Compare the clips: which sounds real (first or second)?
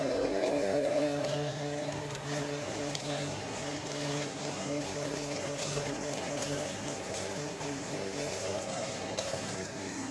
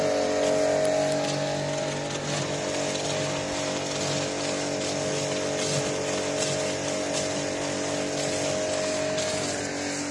second